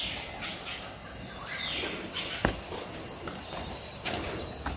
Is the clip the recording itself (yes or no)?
yes